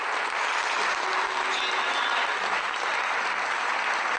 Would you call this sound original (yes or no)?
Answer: yes